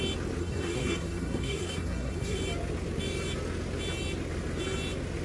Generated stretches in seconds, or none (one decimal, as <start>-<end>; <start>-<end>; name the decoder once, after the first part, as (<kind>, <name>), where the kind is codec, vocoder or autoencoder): 0.4-2.4 (codec, SNAC)